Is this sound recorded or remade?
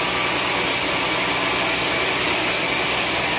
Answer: recorded